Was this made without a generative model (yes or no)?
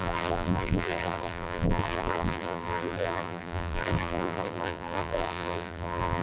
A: no